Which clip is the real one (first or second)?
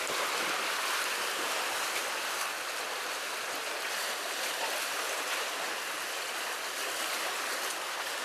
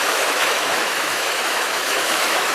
first